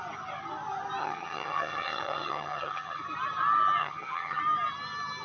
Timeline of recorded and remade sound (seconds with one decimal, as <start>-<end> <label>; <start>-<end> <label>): 0.0-1.0 recorded; 1.0-3.0 remade; 3.0-3.8 recorded; 3.8-4.4 remade; 4.4-5.2 recorded